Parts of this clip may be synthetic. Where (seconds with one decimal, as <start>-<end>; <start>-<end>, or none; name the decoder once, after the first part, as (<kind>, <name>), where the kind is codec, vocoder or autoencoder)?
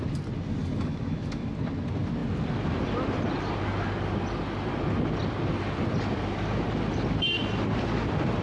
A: 0.6-1.5 (autoencoder, DAC-VAE)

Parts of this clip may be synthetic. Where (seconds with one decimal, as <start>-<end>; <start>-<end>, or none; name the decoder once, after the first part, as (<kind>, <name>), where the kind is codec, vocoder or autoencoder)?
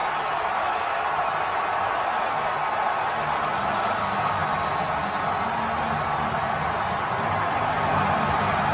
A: none